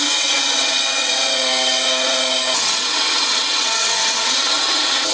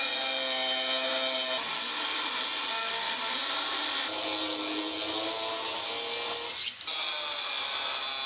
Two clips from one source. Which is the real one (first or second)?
second